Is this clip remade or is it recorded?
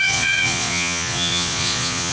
remade